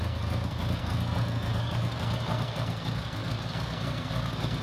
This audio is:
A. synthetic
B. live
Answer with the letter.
A